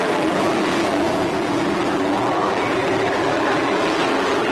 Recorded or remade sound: remade